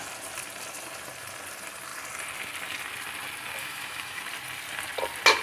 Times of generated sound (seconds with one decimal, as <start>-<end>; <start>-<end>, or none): 3.6-4.2